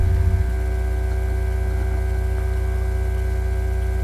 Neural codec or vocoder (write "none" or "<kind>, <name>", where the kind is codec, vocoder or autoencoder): none